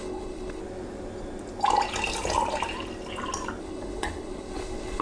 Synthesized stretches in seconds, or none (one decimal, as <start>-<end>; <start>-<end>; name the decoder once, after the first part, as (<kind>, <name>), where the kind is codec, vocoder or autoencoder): 0.0-0.6 (codec, HILCodec); 3.6-5.0